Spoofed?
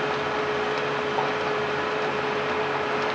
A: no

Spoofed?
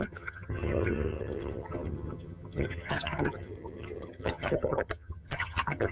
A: yes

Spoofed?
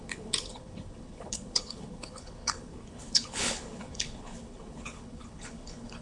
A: yes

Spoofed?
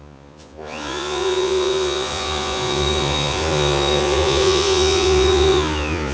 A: yes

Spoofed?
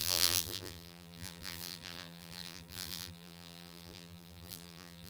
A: yes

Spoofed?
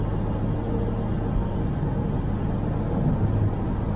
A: no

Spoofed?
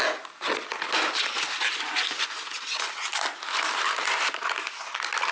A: no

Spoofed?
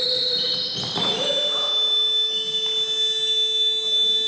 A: no